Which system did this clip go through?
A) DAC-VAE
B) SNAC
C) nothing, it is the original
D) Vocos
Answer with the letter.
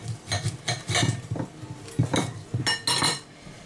C